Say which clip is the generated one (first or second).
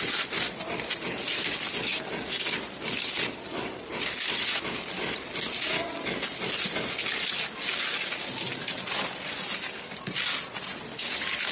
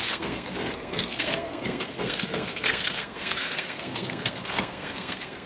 second